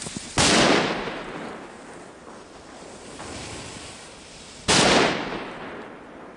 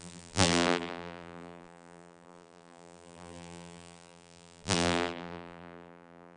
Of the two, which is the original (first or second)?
first